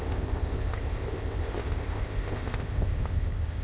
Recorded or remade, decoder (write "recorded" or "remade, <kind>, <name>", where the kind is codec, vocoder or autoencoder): remade, codec, ZipCodec